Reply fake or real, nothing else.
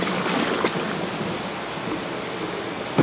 real